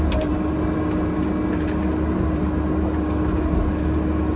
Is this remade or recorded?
recorded